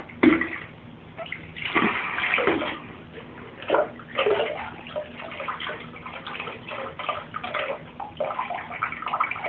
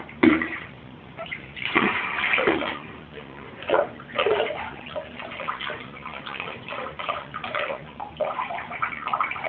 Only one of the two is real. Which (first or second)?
first